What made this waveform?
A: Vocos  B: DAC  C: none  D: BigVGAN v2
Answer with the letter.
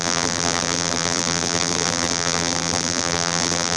D